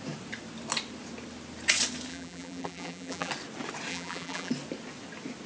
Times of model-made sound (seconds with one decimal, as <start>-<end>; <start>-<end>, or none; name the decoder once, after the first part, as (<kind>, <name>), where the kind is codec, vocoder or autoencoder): 2.1-3.3 (vocoder, BigVGAN v2); 3.9-4.5